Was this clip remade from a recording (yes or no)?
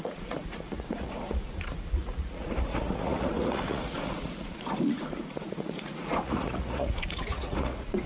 yes